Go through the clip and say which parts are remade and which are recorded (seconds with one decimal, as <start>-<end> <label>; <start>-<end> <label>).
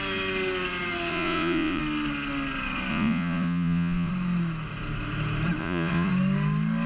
0.0-1.1 recorded; 1.1-1.8 remade; 1.8-2.9 recorded; 2.9-4.1 remade; 4.1-5.6 recorded; 5.6-6.1 remade; 6.1-6.9 recorded